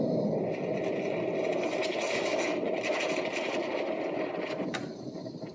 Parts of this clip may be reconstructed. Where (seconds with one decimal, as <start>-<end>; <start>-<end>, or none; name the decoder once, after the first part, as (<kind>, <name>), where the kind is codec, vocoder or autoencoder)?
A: 2.3-4.4 (vocoder, BigVGAN v2)